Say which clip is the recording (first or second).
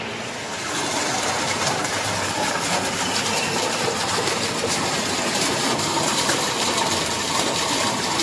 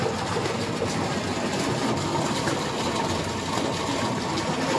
second